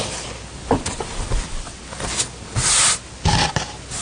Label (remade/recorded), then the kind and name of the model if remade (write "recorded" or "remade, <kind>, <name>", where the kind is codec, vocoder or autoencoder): recorded